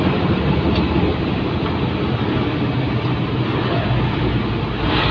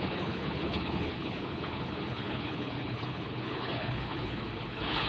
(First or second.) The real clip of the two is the first